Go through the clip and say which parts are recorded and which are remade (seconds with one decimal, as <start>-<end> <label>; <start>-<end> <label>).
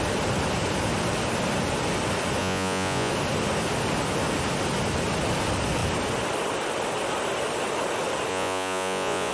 0.0-2.4 recorded; 2.4-3.1 remade; 3.1-8.3 recorded; 8.3-9.3 remade